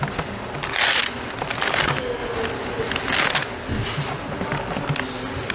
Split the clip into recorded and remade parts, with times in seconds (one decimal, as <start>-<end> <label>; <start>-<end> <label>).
0.0-5.5 recorded